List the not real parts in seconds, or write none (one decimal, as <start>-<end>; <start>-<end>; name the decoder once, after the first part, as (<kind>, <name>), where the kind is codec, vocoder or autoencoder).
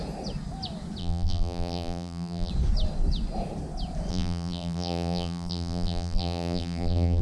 1.0-2.5 (vocoder, BigVGAN v2); 4.1-7.2